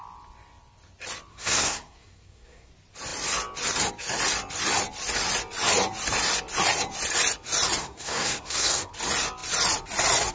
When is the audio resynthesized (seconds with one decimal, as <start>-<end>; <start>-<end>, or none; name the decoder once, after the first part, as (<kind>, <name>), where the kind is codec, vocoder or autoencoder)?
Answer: 1.3-2.7 (codec, SNAC); 7.8-8.9